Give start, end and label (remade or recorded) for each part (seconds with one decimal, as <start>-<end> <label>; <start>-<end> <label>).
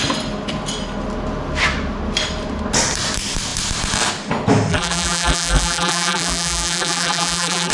0.0-4.7 recorded; 4.7-7.7 remade